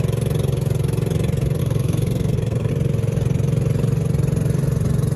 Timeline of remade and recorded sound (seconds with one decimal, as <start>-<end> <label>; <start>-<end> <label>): 0.0-1.6 recorded; 1.6-2.7 remade; 2.7-5.2 recorded